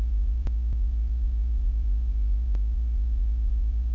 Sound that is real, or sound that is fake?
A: fake